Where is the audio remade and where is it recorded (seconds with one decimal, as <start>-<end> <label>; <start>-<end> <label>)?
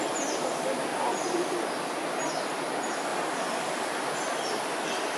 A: 0.0-5.2 recorded